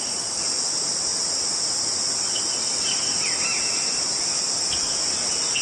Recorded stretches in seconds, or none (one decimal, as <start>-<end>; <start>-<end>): 0.0-5.6